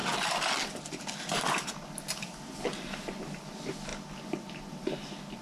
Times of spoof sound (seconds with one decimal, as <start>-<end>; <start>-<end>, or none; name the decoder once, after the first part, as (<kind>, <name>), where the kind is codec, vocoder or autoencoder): none